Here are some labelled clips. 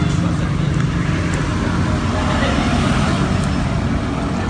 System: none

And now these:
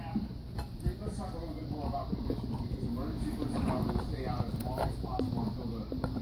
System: none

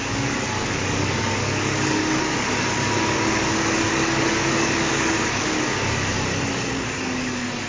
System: codec, DAC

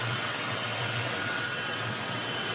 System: vocoder, WaveNeXt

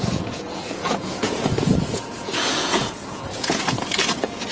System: vocoder, Vocos